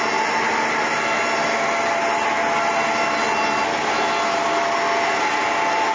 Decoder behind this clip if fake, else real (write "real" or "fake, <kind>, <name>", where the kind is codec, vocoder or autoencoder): real